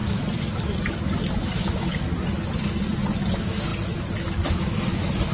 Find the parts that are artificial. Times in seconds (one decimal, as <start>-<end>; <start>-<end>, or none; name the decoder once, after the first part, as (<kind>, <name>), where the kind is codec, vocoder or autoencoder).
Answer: 1.3-2.1 (autoencoder, DAC-VAE); 3.3-3.7; 4.2-5.3